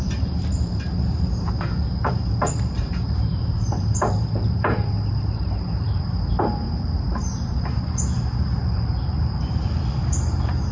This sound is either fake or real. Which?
fake